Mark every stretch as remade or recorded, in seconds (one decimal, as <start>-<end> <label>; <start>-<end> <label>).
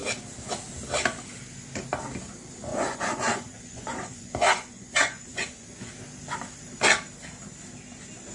0.0-2.7 recorded; 2.7-5.9 remade; 5.9-8.3 recorded